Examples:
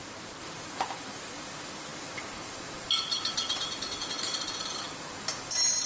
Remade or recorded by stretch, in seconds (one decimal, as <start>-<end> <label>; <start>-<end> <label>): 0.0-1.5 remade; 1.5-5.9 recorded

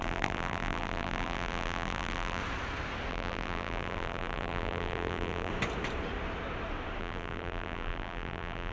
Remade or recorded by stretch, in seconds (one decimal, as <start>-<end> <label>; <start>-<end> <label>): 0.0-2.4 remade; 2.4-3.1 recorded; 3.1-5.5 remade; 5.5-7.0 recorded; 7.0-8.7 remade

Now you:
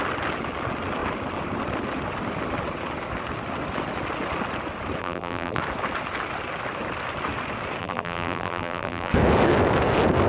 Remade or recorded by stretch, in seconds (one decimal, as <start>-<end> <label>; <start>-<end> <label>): 0.0-5.0 recorded; 5.0-5.6 remade; 5.6-7.8 recorded; 7.8-9.1 remade; 9.1-10.3 recorded